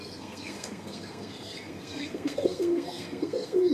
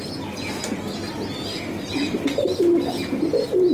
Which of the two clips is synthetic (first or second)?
first